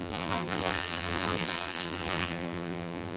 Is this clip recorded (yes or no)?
no